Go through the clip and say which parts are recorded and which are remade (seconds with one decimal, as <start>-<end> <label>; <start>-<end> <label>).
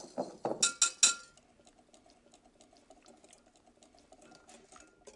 0.0-5.2 recorded